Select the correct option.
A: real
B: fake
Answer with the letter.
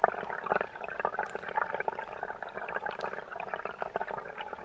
A